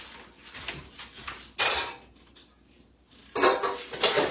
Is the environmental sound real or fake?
real